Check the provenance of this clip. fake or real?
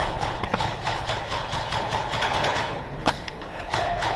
fake